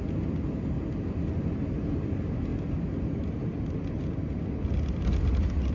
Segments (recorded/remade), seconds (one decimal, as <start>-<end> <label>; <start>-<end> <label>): 0.0-5.7 recorded